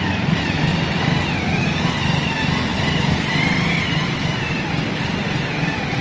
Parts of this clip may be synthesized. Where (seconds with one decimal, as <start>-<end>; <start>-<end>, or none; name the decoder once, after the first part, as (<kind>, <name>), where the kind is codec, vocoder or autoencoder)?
2.7-6.0 (vocoder, BigVGAN v2)